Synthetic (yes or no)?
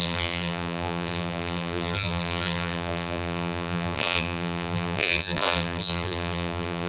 yes